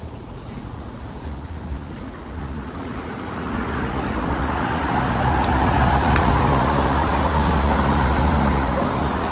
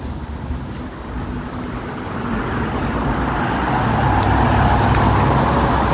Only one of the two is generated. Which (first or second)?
first